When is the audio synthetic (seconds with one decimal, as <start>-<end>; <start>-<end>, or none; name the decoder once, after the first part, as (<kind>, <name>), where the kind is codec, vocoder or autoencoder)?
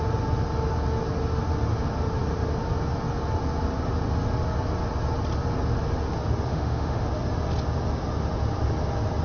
6.5-7.1 (autoencoder, DAC-VAE)